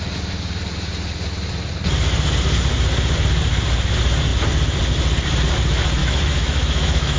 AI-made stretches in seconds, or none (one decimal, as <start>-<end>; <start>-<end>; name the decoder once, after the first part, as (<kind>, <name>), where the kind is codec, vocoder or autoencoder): 6.0-7.2 (autoencoder, DAC-VAE)